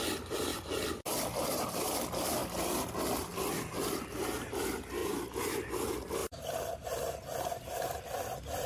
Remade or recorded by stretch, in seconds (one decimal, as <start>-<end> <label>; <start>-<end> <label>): 0.0-5.0 recorded; 5.0-5.7 remade; 5.7-6.2 recorded; 6.2-8.0 remade; 8.0-8.7 recorded